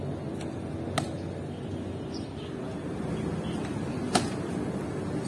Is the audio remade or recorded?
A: recorded